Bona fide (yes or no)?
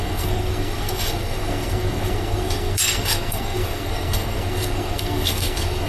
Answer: no